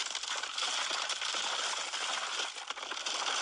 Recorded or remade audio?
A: recorded